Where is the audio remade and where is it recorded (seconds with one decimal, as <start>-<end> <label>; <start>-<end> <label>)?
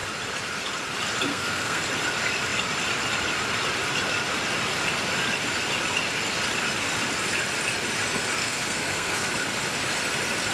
0.0-1.3 recorded; 1.3-1.8 remade; 1.8-8.4 recorded; 8.4-9.3 remade; 9.3-10.5 recorded